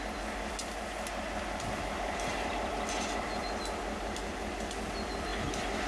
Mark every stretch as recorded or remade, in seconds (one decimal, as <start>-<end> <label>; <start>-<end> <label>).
0.0-5.9 recorded